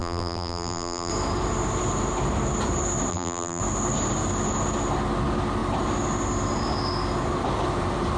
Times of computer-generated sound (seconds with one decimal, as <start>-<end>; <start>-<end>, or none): 0.0-1.1; 3.1-3.6